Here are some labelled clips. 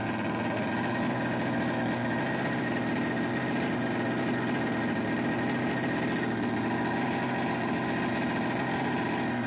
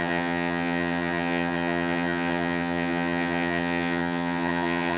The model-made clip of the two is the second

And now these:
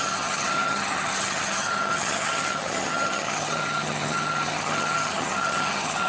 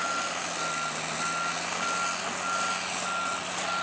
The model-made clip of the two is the first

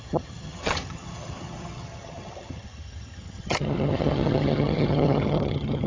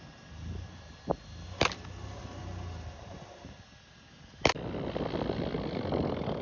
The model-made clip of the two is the first